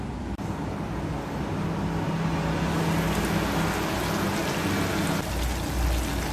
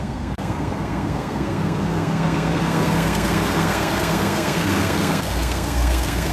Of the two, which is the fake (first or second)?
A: second